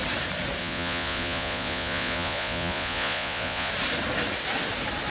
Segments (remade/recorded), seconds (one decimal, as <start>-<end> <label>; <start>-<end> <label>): 0.0-0.6 recorded; 0.6-3.7 remade; 3.7-5.1 recorded